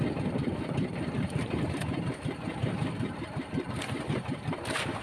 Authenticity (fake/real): fake